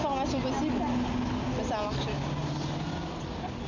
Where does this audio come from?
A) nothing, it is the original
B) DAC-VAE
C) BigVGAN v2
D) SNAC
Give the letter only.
A